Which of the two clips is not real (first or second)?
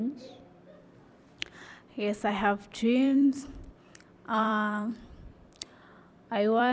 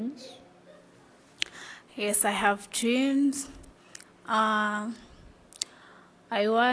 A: first